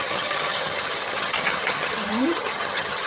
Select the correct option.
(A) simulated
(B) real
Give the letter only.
A